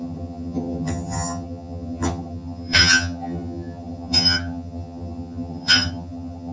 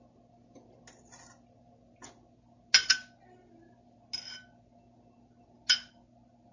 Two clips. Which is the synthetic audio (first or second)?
first